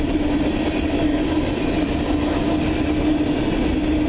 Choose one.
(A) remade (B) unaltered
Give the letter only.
B